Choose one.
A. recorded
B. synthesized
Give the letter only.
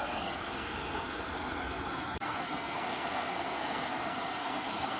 B